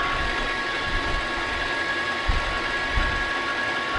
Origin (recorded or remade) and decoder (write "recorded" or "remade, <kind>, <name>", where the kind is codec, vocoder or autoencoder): recorded